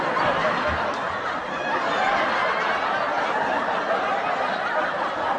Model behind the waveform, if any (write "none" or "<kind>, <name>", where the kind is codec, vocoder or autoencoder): none